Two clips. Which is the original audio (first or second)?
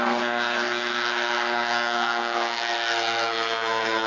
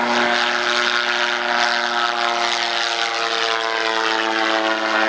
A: second